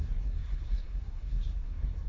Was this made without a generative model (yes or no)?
no